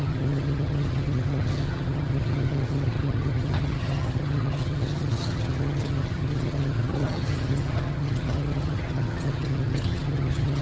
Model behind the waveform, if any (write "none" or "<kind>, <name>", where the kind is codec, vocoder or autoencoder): vocoder, HiFi-GAN